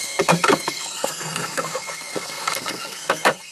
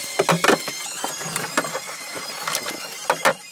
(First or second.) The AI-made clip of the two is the first